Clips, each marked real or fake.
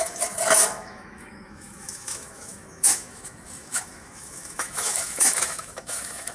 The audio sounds fake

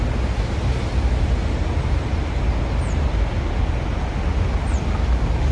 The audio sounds real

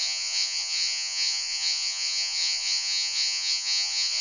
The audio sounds fake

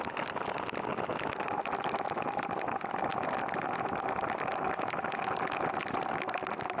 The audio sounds real